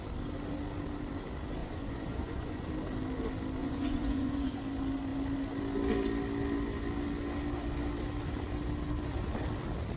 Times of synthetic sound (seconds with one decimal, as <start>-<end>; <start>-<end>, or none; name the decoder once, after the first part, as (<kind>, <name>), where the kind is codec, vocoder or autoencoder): 1.6-2.7 (vocoder, Vocos); 3.6-4.6